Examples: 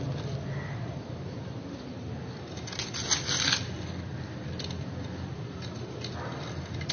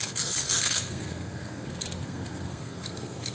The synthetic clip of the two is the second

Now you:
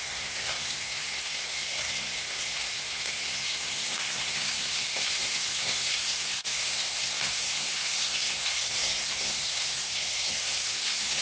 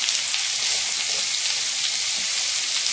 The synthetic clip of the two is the first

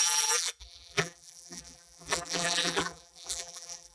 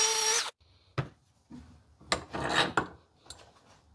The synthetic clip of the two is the first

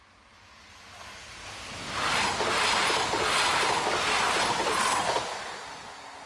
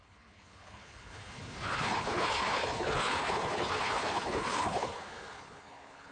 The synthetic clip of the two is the second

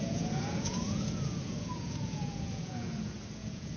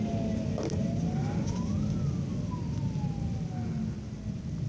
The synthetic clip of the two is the first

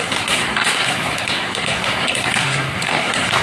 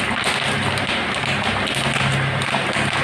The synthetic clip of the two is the first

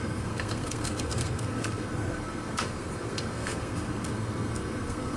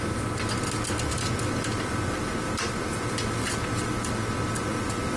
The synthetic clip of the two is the first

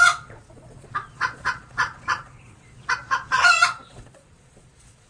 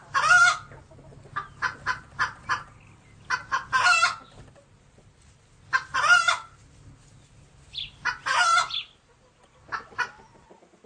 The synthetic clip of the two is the first